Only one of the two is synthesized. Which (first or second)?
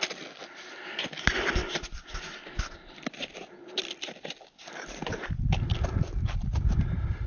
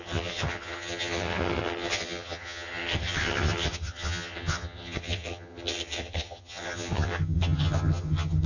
second